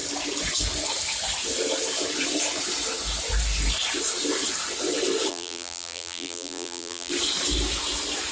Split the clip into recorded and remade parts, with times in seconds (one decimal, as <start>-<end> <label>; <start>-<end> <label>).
0.0-5.3 recorded; 5.3-7.1 remade; 7.1-8.3 recorded